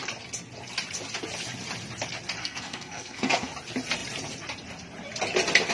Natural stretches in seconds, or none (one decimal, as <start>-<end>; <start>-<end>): 0.0-2.4; 3.5-5.7